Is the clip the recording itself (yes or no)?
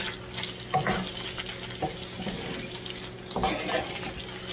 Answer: yes